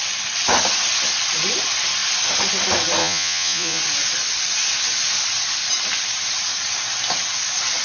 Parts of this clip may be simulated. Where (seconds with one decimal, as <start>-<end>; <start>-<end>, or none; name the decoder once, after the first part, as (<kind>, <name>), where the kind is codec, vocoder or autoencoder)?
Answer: 3.0-3.8 (vocoder, Vocos)